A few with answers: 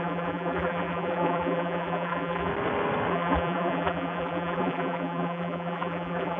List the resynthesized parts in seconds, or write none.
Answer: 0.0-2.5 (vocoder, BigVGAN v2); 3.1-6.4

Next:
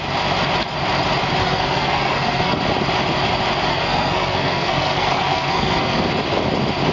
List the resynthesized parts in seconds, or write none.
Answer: 1.4-2.6 (codec, SNAC); 3.7-6.1